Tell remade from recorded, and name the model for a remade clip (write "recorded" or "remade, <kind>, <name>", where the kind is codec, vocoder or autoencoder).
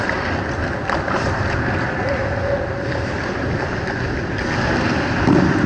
recorded